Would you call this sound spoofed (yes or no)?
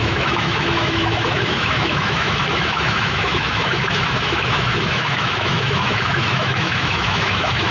yes